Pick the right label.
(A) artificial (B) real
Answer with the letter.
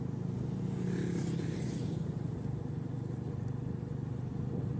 B